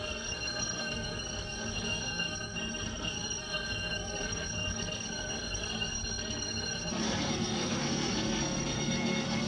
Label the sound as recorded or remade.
remade